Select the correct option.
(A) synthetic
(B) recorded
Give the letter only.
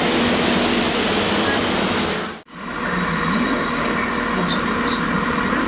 B